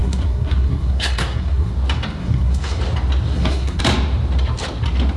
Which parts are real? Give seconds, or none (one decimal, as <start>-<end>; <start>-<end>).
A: 1.7-2.2; 2.8-3.3; 3.8-5.2